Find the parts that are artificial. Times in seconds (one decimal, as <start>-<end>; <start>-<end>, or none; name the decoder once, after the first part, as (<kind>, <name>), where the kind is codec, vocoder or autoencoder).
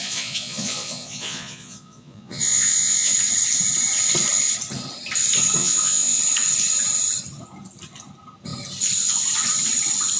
0.0-3.1 (vocoder, Vocos); 5.6-6.2